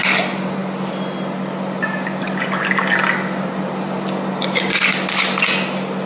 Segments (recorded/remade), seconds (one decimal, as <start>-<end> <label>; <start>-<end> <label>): 0.0-6.1 recorded

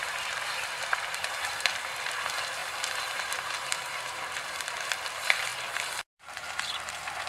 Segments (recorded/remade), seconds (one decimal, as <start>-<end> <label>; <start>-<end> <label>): 0.0-7.3 recorded

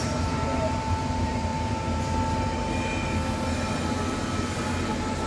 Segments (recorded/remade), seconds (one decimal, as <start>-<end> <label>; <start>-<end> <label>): 0.0-1.5 remade; 1.5-4.5 recorded; 4.5-5.3 remade

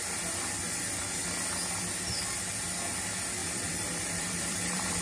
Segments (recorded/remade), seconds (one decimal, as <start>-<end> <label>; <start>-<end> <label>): 0.0-3.4 recorded; 3.4-5.0 remade

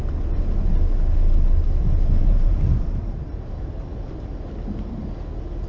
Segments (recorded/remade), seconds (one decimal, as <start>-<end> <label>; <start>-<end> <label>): 0.0-2.2 recorded; 2.2-3.6 remade; 3.6-5.7 recorded

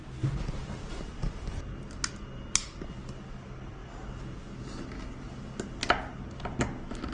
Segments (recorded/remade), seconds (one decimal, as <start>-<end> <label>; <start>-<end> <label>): 0.0-0.6 recorded; 0.6-1.6 remade; 1.6-7.1 recorded